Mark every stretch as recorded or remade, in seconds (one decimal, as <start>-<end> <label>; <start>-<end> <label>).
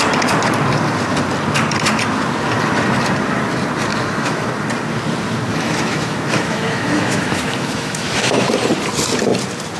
0.0-3.9 recorded; 3.9-4.5 remade; 4.5-5.5 recorded; 5.5-8.3 remade; 8.3-9.8 recorded